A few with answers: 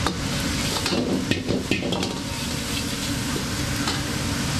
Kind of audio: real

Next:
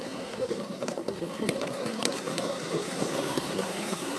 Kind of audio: fake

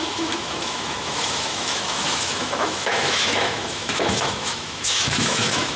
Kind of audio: fake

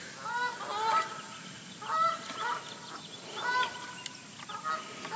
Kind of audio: real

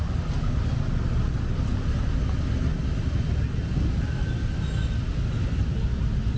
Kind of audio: real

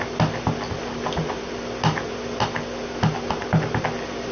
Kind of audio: real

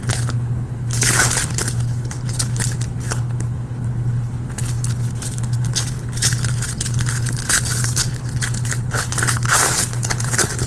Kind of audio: fake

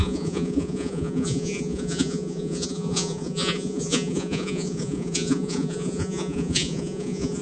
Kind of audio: fake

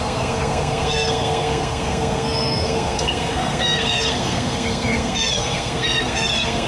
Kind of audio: fake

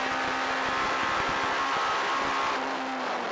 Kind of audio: real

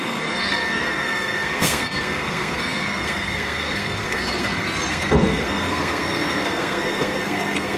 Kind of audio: fake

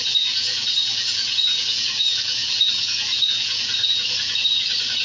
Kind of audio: fake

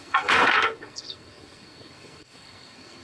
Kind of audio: fake